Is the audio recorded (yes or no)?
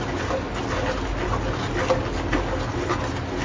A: yes